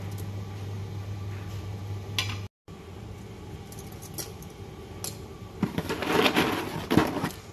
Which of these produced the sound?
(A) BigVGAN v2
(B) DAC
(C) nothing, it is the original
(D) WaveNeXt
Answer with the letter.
C